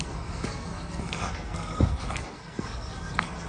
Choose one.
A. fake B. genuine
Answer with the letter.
A